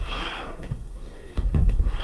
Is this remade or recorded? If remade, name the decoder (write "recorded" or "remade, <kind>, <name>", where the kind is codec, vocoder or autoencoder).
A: remade, codec, SNAC